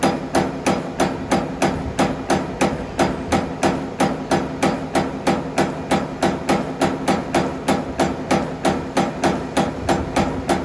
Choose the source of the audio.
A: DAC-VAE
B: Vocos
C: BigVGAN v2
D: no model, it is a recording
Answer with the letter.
D